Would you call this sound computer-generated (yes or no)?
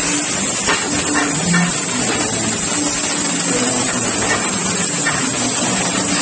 no